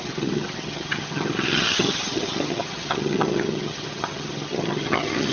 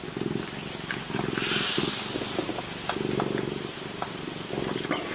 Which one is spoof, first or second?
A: first